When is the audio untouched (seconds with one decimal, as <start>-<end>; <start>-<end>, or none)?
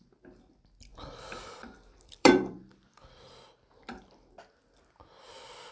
0.0-0.9; 3.3-5.7